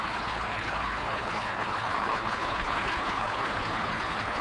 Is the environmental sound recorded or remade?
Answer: remade